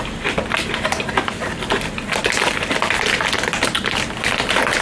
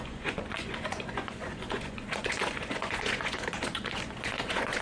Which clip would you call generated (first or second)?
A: second